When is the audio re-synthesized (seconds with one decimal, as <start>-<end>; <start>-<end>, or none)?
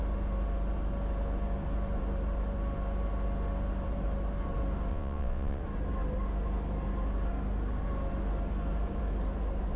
4.9-5.6